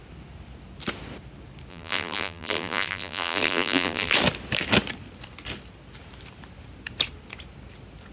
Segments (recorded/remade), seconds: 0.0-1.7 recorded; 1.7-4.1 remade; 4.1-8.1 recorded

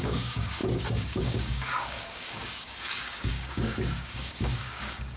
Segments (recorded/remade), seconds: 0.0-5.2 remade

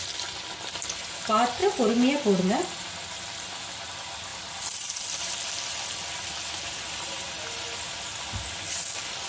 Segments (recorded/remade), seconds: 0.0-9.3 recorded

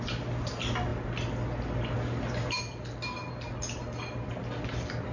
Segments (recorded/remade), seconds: 0.0-5.1 recorded

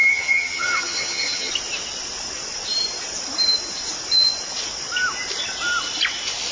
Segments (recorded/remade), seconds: 0.0-1.5 remade; 1.5-6.5 recorded